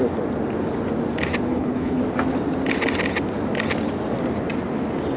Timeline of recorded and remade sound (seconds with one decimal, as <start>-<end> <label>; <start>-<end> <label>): 0.0-1.5 recorded; 1.5-2.0 remade; 2.0-5.2 recorded